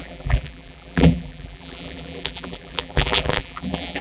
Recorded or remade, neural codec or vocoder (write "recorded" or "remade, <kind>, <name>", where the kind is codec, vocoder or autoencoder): remade, vocoder, BigVGAN v2